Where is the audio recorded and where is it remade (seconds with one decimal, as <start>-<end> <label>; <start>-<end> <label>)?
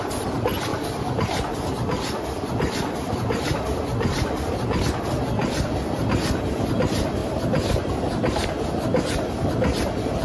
0.0-0.7 recorded; 0.7-4.8 remade; 4.8-5.4 recorded; 5.4-6.1 remade; 6.1-7.2 recorded; 7.2-9.5 remade; 9.5-10.2 recorded